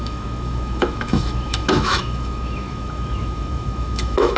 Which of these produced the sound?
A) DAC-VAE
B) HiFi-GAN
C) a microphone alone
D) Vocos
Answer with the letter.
A